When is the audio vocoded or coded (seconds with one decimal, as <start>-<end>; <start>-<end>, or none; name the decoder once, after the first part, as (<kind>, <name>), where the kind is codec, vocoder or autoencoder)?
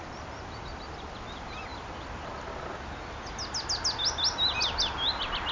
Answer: none